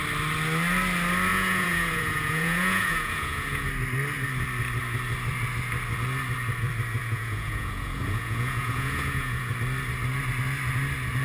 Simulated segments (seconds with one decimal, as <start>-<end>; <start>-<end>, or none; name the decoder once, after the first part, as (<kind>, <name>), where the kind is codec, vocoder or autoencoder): 1.3-3.7 (vocoder, Vocos); 7.0-9.5